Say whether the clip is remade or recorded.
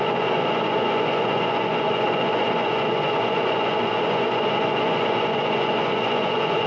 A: remade